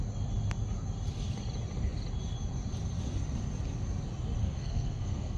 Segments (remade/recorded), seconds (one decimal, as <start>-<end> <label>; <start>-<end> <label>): 0.0-4.4 recorded; 4.4-5.4 remade